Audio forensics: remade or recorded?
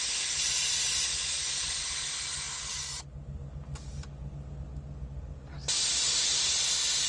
recorded